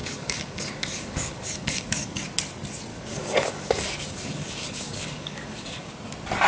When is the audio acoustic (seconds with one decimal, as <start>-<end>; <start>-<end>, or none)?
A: 2.2-2.9; 5.9-6.5